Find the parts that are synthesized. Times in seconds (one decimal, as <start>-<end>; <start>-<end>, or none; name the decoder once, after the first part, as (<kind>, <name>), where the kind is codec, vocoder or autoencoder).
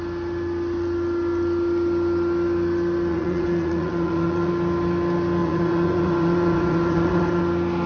3.1-4.5 (vocoder, Vocos); 5.4-7.4